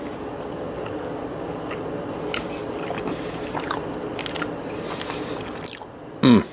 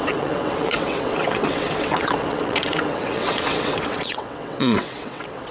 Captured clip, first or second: first